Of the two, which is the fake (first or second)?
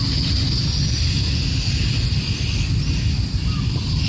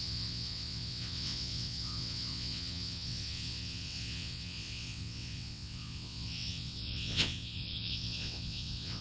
second